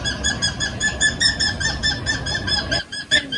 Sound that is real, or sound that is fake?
real